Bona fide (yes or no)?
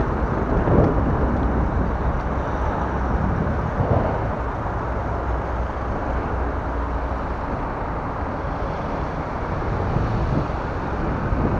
yes